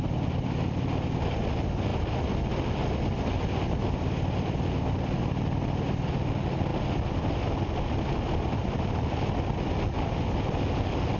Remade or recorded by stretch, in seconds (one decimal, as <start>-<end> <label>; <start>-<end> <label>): 0.0-11.2 recorded